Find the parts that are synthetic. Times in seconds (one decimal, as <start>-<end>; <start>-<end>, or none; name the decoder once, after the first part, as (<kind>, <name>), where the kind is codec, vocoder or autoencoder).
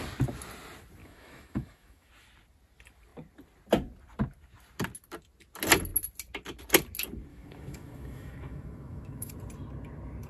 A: 1.0-2.1 (autoencoder, DAC-VAE); 7.3-9.3